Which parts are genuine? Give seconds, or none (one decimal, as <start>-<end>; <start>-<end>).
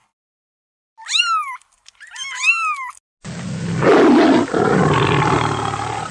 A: 0.0-6.1